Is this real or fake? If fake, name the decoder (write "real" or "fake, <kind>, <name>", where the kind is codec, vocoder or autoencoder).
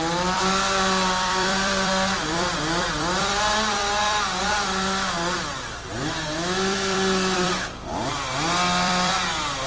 fake, vocoder, BigVGAN v2